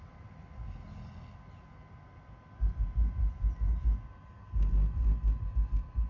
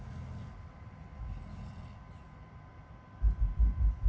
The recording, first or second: first